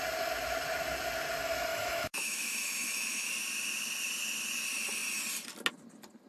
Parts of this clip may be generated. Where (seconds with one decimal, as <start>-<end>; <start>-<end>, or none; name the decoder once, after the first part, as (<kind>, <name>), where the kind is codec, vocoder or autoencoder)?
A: 1.7-3.3 (autoencoder, DAC-VAE)